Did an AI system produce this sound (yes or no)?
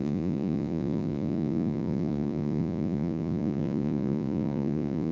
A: yes